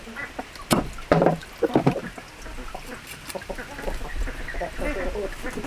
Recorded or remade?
recorded